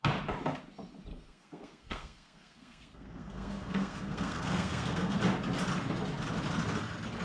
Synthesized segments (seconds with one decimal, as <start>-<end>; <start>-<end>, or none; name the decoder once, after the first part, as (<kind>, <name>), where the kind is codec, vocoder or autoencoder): 1.1-5.2 (codec, SNAC)